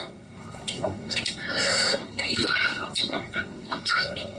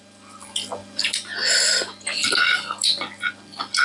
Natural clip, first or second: second